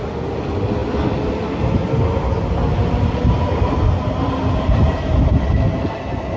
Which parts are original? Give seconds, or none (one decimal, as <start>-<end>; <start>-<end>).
0.0-6.4